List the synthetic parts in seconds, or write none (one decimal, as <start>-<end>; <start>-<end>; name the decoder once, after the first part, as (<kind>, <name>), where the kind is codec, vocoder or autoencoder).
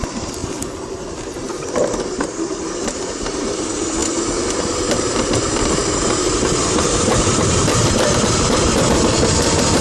0.0-0.4 (vocoder, BigVGAN v2); 1.8-4.0; 4.9-9.8